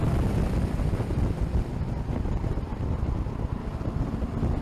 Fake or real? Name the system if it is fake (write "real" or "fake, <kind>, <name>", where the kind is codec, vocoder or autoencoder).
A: real